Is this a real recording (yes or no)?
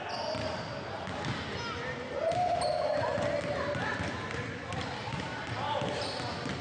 yes